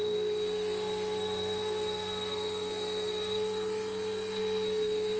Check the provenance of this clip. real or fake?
fake